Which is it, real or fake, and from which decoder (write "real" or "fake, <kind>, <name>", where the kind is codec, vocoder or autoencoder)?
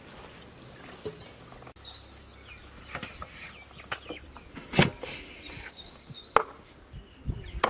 real